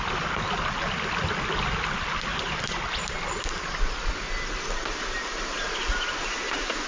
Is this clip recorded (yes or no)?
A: yes